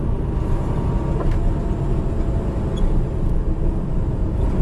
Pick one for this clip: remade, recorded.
recorded